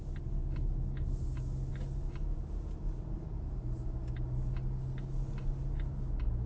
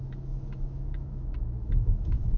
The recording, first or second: first